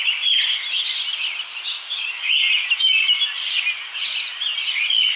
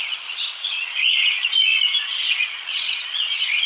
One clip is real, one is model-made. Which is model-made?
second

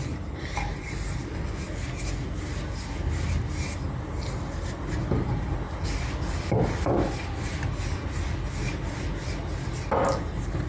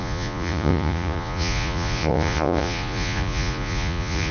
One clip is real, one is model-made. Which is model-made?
second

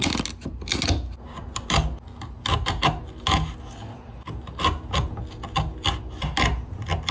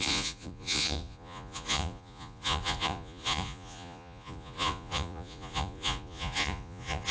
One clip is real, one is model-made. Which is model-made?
second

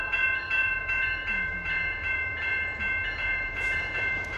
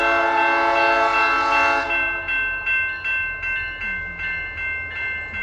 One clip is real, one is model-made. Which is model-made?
first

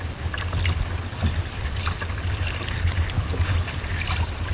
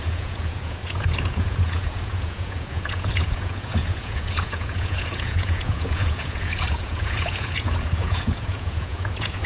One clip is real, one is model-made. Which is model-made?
second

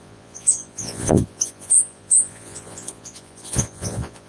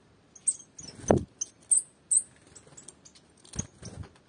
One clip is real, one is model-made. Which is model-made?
first